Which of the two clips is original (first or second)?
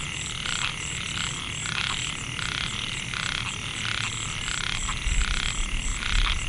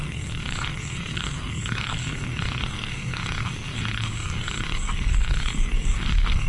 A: first